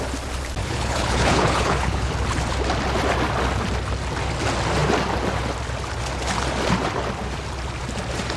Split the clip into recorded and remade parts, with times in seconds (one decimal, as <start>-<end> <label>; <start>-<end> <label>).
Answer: 0.0-0.6 recorded; 0.6-2.1 remade; 2.1-8.4 recorded